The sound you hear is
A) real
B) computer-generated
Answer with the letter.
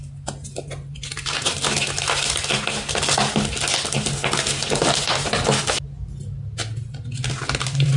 A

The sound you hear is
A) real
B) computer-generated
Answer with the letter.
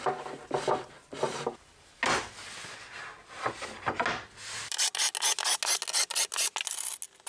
A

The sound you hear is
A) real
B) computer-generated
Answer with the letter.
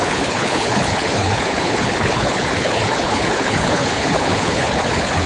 B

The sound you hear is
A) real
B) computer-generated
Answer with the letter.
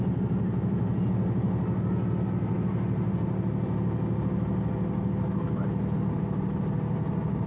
A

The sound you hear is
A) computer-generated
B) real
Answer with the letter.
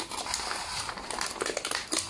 B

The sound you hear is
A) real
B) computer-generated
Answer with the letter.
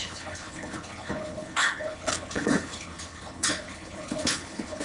B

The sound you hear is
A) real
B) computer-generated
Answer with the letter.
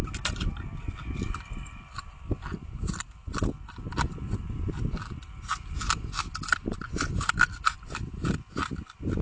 A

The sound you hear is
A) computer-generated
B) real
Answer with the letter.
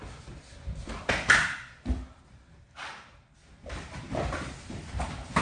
B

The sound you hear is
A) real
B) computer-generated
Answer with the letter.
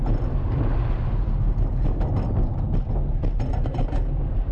A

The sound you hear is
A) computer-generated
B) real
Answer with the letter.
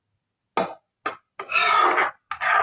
B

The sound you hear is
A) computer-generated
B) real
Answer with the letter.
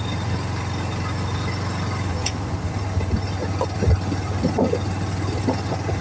B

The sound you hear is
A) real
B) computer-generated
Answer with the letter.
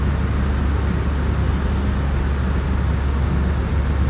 A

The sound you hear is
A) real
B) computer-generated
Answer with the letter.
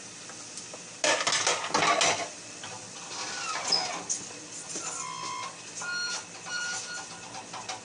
A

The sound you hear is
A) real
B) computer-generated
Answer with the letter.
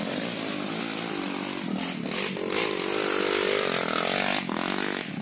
A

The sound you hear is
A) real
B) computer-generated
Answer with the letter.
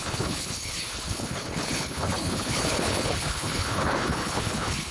B